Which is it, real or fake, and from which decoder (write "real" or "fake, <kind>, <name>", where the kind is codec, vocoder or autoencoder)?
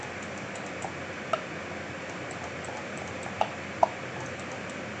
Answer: real